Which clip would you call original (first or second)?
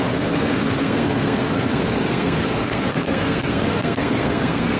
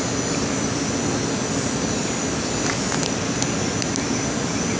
second